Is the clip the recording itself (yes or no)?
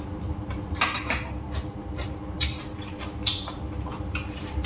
no